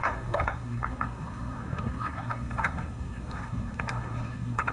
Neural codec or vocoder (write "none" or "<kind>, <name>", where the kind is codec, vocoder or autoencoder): codec, SNAC